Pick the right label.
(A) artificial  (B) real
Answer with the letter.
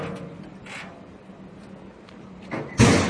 B